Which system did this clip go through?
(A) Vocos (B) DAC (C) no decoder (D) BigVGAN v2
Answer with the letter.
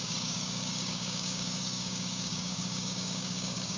B